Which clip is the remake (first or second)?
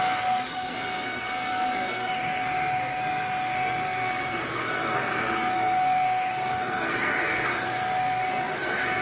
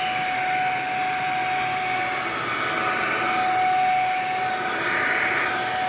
first